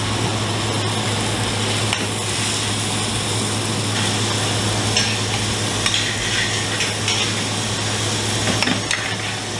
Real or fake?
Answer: real